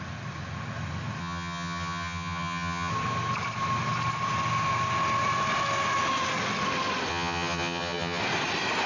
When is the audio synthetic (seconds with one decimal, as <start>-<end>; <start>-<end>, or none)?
1.2-2.9; 7.1-8.2